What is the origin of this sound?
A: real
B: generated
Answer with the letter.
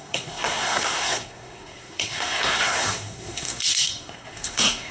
B